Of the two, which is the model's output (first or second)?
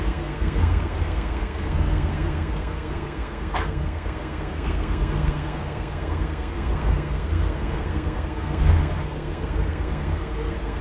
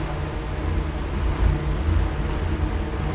first